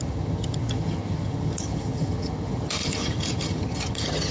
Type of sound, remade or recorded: remade